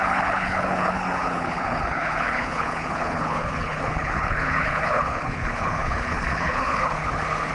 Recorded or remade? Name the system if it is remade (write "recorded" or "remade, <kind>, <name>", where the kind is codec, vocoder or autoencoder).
remade, codec, HILCodec